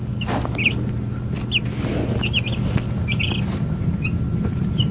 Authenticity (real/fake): real